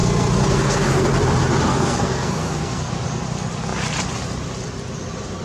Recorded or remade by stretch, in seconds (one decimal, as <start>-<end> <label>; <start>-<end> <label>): 0.0-1.1 remade; 1.1-1.7 recorded; 1.7-2.9 remade; 2.9-5.4 recorded